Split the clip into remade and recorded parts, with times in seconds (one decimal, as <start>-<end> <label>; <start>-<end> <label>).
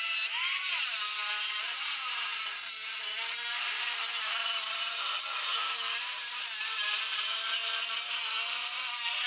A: 0.0-7.6 remade; 7.6-8.9 recorded; 8.9-9.3 remade